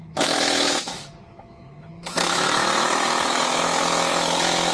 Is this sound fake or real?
fake